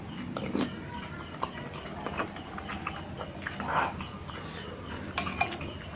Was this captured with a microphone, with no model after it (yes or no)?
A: yes